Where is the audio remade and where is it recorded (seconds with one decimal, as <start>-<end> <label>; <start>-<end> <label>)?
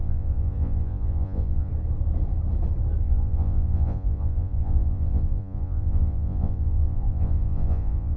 0.0-1.7 remade; 1.7-3.0 recorded; 3.0-8.2 remade